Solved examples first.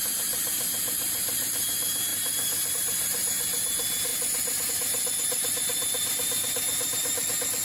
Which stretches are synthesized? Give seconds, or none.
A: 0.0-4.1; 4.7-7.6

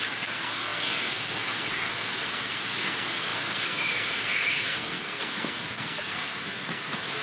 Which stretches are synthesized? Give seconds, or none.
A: 0.0-7.2

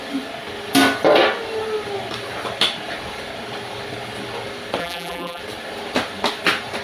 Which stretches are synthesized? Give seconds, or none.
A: 4.8-5.4

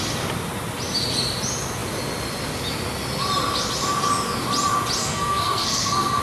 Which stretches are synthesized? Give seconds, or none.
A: 5.0-6.2

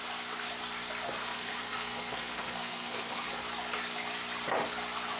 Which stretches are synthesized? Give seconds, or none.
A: 1.2-3.3

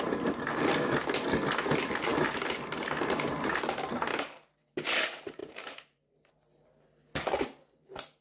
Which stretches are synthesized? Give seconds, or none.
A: 4.1-4.7; 5.4-6.3

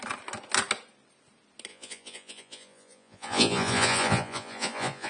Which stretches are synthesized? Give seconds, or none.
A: 1.7-5.1

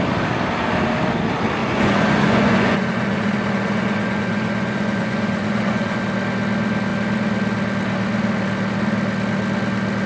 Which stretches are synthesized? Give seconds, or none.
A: 1.6-6.0